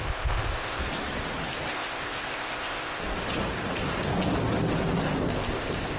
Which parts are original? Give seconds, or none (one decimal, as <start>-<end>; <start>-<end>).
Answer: 0.8-1.7; 3.0-5.2